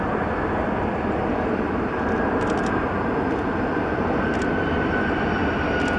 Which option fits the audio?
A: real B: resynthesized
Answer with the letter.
A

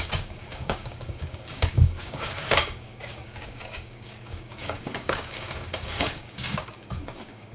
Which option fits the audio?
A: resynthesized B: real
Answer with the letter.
A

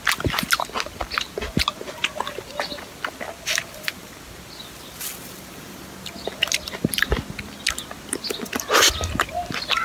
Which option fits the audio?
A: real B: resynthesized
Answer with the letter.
A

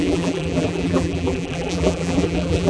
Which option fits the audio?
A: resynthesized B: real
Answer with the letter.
A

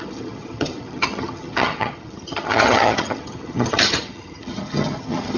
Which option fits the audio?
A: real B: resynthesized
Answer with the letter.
B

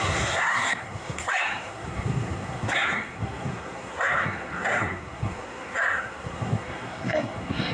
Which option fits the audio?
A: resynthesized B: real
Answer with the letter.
A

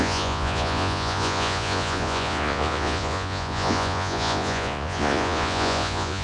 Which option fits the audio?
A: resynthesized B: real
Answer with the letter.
A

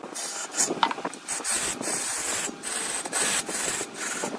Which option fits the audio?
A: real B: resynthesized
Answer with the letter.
A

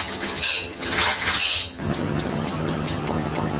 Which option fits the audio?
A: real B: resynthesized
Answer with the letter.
B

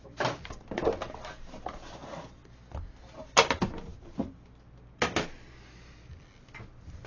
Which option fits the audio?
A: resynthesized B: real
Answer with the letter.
B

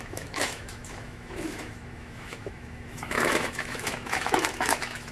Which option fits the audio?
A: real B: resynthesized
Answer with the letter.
B